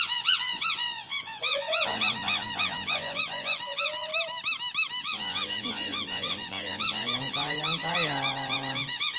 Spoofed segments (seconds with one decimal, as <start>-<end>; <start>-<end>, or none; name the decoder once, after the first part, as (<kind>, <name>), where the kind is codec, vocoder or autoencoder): 0.0-4.1 (vocoder, Vocos); 5.0-9.2